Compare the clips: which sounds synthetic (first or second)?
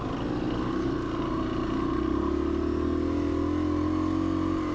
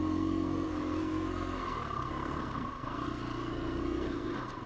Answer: second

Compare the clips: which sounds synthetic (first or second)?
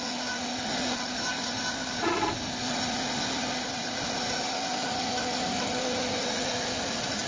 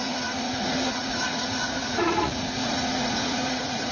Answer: second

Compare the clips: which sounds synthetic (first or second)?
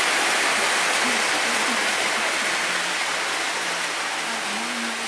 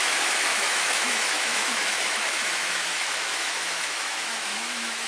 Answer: second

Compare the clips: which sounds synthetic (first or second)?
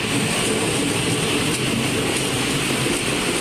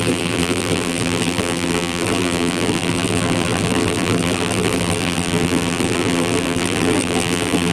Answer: second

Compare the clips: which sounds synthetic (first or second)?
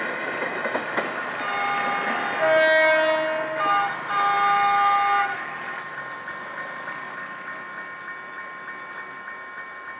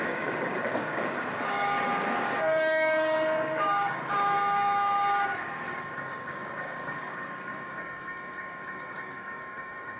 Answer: second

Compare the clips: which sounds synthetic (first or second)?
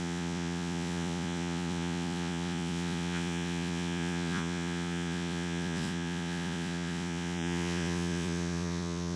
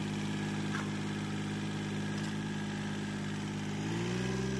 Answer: first